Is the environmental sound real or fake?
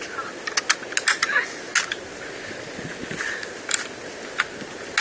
real